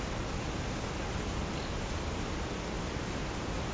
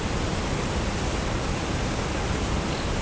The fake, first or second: second